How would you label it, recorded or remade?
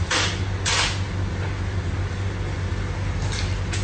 recorded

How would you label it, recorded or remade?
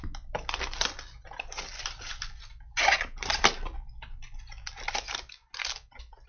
recorded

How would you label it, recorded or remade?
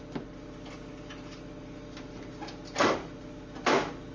recorded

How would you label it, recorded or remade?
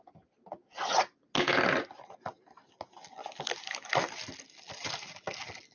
recorded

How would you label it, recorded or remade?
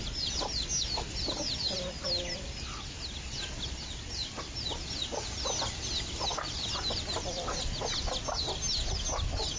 recorded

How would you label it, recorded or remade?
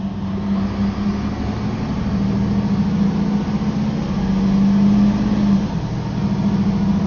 recorded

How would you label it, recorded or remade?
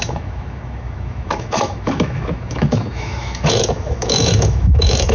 remade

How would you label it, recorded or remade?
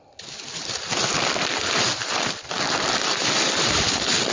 recorded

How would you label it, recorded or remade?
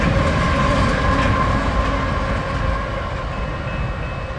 recorded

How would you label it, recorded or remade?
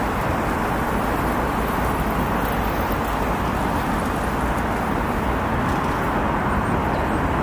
recorded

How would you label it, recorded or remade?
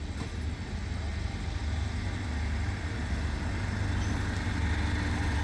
recorded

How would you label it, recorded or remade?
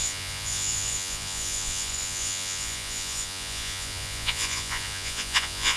remade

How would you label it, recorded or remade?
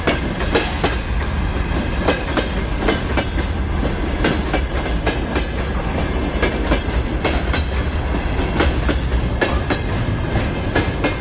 recorded